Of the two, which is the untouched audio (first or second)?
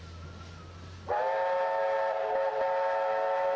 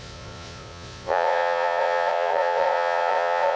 first